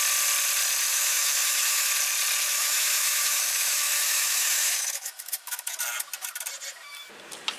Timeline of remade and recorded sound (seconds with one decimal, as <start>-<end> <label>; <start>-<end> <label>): 0.0-0.9 recorded; 0.9-1.9 remade; 1.9-2.6 recorded; 2.6-5.8 remade; 5.8-7.6 recorded